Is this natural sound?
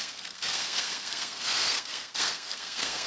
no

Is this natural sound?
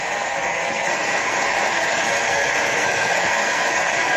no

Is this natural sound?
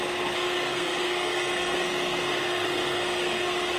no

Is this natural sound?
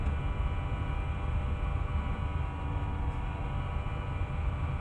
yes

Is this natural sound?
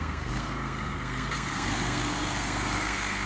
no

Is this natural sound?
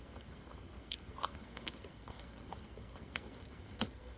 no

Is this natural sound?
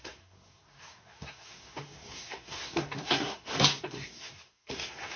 no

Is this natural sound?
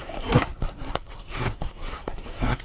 no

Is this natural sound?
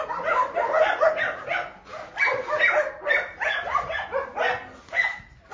yes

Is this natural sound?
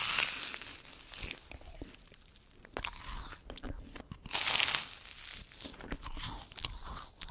yes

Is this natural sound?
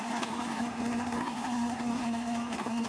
no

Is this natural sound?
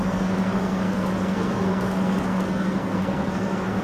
no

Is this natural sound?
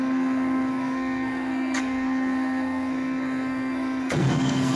no